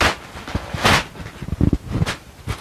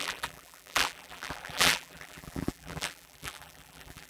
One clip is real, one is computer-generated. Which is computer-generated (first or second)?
second